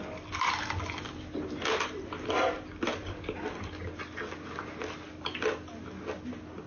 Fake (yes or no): no